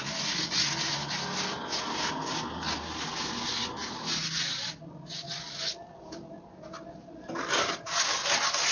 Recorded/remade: recorded